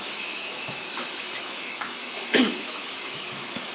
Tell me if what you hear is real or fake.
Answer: fake